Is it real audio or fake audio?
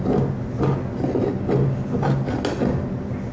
real